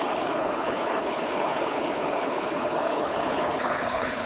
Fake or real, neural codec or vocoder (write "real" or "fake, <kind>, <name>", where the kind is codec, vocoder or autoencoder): fake, codec, HILCodec